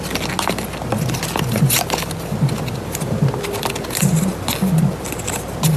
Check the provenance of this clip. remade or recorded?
recorded